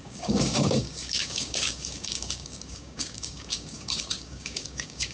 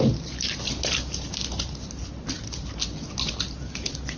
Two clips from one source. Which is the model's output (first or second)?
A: first